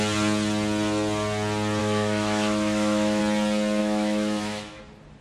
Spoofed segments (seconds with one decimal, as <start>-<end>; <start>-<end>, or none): 1.8-3.2; 3.8-4.8